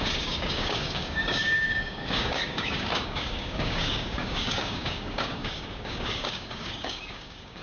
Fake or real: fake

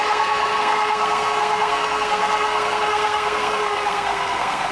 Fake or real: fake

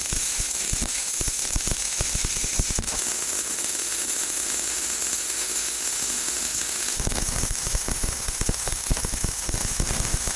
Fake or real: fake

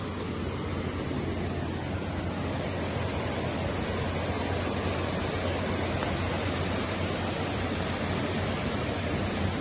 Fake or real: real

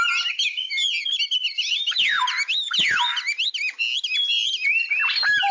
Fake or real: real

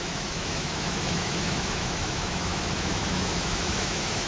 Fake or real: fake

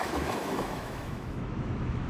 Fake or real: fake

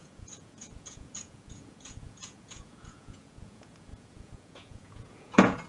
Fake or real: fake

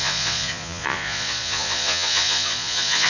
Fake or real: fake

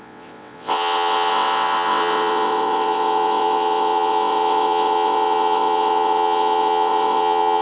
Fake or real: fake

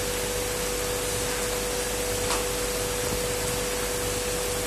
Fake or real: real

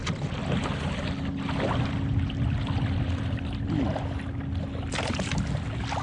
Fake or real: real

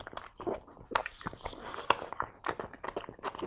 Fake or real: real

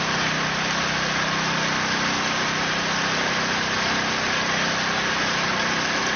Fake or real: real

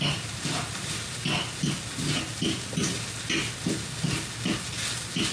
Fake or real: real